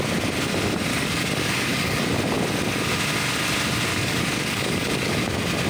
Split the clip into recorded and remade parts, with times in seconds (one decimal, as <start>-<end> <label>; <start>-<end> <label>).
0.0-0.9 recorded; 0.9-2.0 remade; 2.0-3.9 recorded; 3.9-5.2 remade; 5.2-5.7 recorded